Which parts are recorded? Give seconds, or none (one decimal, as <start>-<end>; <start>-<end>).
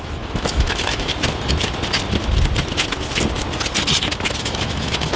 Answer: 1.1-4.2